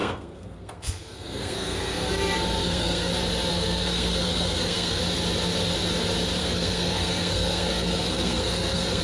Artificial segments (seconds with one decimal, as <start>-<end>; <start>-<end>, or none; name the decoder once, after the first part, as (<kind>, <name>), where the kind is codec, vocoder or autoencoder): 0.0-2.1 (codec, SNAC); 2.6-3.1; 3.5-5.0; 6.4-9.0